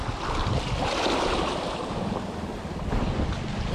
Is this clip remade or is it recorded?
recorded